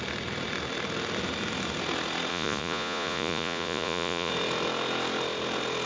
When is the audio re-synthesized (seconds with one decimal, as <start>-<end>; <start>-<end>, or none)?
2.3-4.3

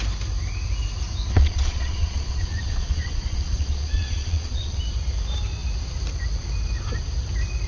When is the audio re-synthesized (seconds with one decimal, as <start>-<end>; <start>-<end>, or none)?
1.3-4.8